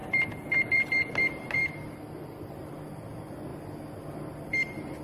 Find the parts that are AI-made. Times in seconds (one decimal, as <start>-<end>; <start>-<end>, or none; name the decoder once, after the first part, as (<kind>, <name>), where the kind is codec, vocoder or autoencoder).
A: 0.0-1.6 (vocoder, BigVGAN v2); 2.5-3.5; 4.3-5.0